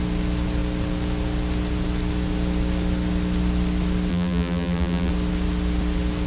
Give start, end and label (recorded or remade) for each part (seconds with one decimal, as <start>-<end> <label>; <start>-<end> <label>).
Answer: 0.0-4.1 recorded; 4.1-5.1 remade; 5.1-6.3 recorded